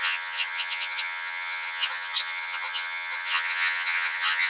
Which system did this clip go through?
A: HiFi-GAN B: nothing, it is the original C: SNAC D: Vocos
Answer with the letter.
A